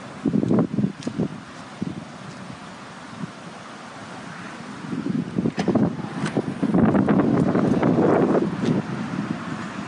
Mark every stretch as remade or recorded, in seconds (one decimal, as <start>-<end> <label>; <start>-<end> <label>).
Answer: 0.0-9.9 recorded